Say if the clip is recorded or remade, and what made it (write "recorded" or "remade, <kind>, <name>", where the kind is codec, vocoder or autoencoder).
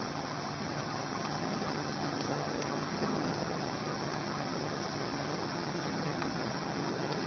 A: remade, vocoder, HiFi-GAN